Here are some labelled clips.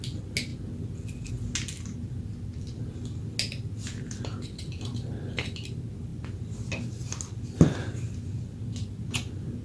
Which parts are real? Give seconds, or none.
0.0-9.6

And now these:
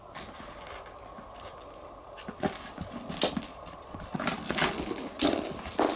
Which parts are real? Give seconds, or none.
0.0-3.5; 4.2-6.0

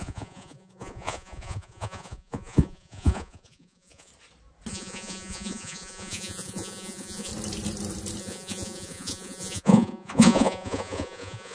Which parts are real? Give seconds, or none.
4.1-4.7; 7.3-8.2

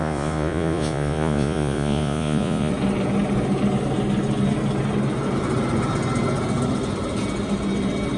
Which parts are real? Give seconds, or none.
2.7-8.2